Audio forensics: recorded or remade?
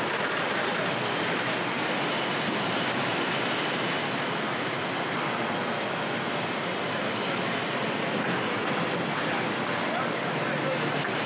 recorded